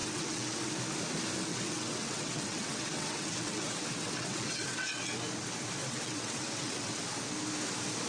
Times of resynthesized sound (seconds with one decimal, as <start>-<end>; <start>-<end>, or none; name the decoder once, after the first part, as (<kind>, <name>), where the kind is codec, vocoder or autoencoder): 0.0-0.8 (vocoder, WaveNeXt); 1.5-5.1; 5.8-7.0